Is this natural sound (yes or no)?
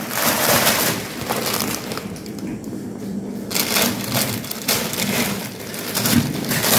no